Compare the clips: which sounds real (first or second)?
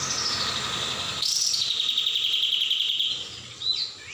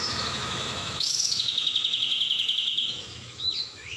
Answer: first